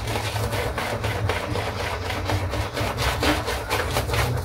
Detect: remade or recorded recorded